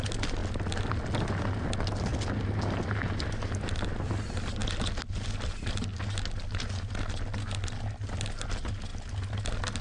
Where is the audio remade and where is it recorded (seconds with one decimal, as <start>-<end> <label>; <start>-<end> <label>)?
0.0-9.8 recorded